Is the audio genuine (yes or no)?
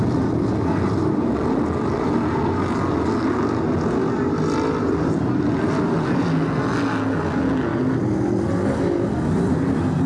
yes